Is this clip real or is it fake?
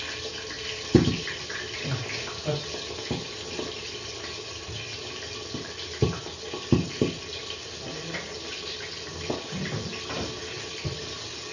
real